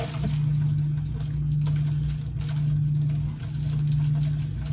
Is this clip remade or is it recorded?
recorded